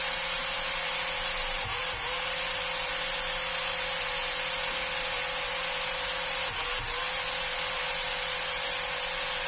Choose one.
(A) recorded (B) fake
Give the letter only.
A